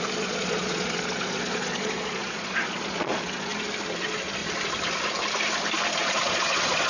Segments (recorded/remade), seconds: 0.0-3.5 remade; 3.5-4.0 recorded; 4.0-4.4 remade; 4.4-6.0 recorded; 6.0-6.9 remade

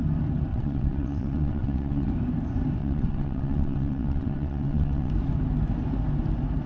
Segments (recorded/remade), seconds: 0.0-0.5 recorded; 0.5-2.1 remade; 2.1-2.8 recorded; 2.8-5.1 remade; 5.1-6.7 recorded

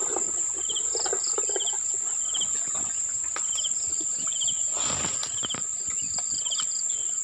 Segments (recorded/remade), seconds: 0.0-7.2 recorded

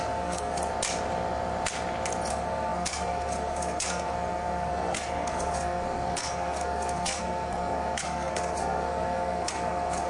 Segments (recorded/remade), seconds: 0.0-0.7 remade; 0.7-2.3 recorded; 2.3-10.1 remade

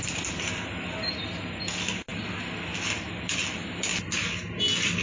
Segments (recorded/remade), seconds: 0.0-5.0 recorded

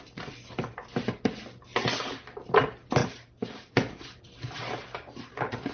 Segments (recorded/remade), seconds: 0.0-3.0 recorded; 3.0-3.7 remade; 3.7-4.9 recorded; 4.9-5.7 remade

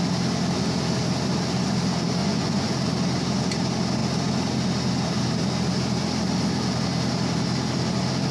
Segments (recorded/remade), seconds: 0.0-2.2 recorded; 2.2-2.7 remade; 2.7-8.3 recorded